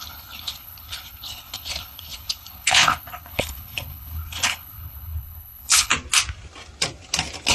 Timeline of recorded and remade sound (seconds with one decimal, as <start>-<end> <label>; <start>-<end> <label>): 0.0-5.9 remade; 5.9-7.5 recorded